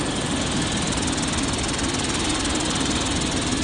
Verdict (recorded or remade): recorded